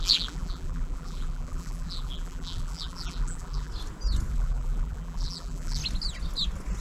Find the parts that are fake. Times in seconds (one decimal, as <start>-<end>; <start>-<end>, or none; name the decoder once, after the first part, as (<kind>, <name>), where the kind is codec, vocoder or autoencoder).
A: 0.0-3.7 (vocoder, BigVGAN v2); 4.3-5.8